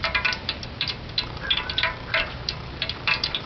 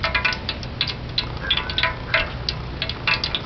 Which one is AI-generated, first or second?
first